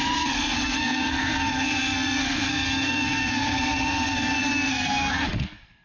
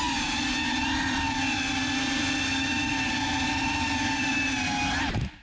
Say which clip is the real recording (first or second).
second